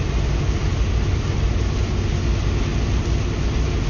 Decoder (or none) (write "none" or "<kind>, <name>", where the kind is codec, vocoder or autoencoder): none